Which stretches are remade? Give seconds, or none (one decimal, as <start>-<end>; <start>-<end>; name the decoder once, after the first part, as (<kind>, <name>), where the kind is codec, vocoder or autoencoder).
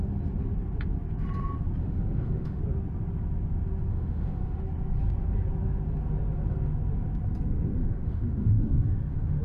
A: 1.8-2.6 (autoencoder, DAC-VAE); 3.9-4.6; 7.8-9.4